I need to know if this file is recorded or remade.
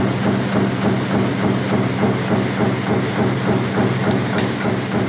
recorded